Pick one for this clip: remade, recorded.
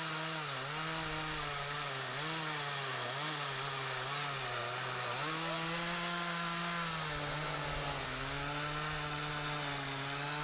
recorded